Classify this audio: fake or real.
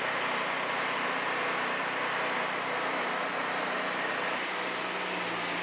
real